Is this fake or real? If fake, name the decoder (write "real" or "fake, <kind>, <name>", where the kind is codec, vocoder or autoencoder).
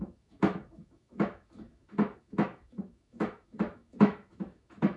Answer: fake, autoencoder, DAC-VAE